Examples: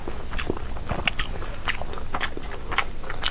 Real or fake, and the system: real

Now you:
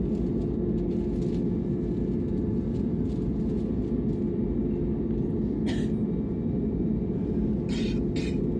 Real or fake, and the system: real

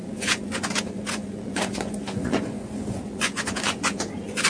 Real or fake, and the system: fake, vocoder, Vocos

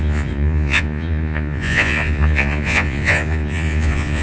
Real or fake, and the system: fake, vocoder, Vocos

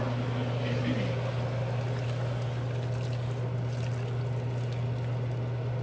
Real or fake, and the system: real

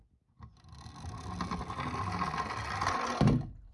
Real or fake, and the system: real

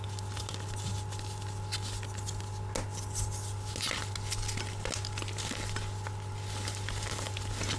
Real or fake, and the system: real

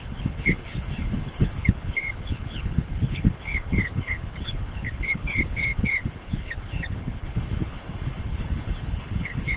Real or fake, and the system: fake, codec, HILCodec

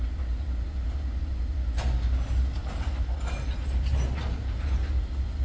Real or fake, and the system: real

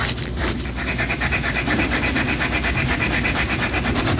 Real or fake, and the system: real